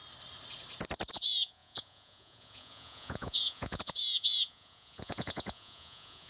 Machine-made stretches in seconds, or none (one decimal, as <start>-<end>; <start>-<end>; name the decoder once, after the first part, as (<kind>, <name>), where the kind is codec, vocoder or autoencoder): 1.1-6.3 (vocoder, Vocos)